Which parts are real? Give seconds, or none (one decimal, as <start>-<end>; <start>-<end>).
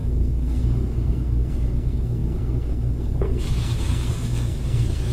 none